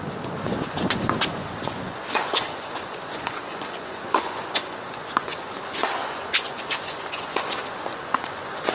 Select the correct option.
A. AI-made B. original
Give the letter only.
A